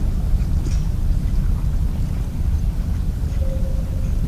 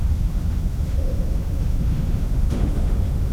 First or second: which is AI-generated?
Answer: second